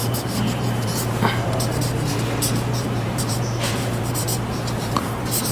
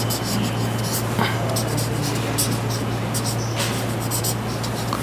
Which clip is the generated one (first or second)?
first